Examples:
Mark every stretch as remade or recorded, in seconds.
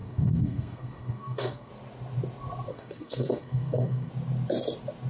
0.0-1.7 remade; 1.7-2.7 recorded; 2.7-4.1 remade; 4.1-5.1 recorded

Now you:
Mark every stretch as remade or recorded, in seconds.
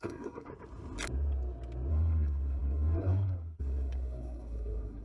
0.0-0.5 remade; 0.5-1.9 recorded; 1.9-5.0 remade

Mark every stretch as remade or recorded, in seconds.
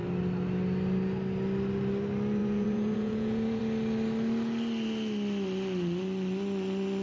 0.0-2.4 recorded; 2.4-3.6 remade; 3.6-7.0 recorded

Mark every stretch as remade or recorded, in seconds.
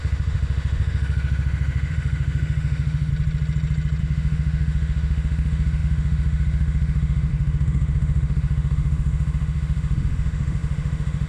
0.0-3.1 remade; 3.1-4.0 recorded; 4.0-11.3 remade